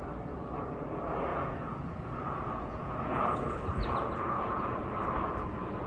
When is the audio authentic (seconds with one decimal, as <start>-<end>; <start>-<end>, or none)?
0.0-1.3; 4.8-5.9